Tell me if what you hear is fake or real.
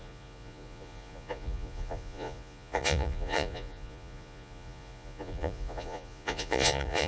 fake